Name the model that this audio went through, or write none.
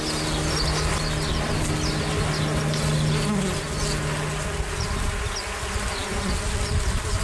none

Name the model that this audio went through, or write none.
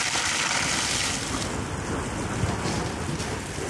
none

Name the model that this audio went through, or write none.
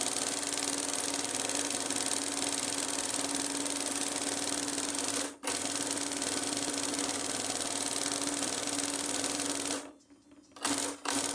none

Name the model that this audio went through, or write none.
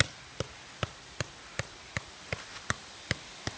none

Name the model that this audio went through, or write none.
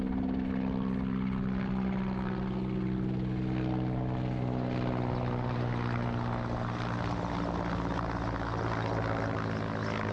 none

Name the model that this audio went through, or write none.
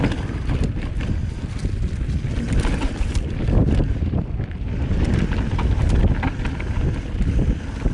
none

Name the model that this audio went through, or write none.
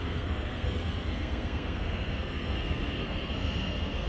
codec, SNAC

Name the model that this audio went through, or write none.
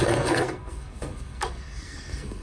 codec, SNAC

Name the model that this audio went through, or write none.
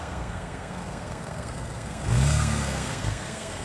codec, SNAC